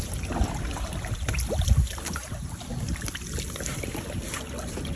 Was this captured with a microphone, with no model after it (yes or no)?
yes